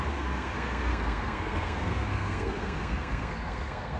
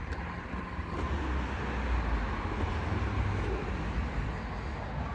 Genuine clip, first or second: second